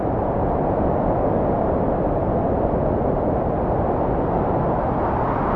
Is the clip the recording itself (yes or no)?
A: yes